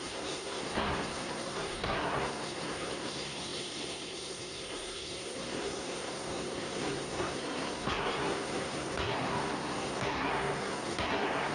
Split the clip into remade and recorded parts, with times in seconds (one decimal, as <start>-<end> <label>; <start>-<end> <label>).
0.0-11.5 remade